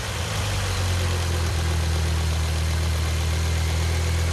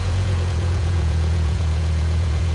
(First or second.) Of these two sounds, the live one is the first